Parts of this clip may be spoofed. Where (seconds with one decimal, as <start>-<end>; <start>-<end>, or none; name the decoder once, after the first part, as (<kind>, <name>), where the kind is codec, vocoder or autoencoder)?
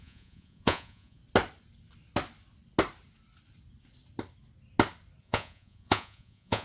0.0-1.2 (vocoder, Vocos); 5.2-6.6